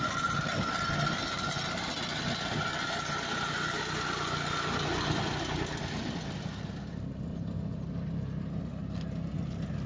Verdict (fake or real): real